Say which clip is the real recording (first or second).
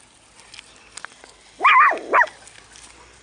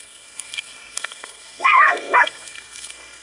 first